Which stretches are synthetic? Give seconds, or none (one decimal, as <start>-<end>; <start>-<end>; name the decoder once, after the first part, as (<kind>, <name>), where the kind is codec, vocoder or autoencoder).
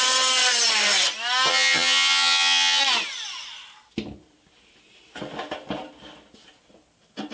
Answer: 1.5-2.8 (vocoder, HiFi-GAN)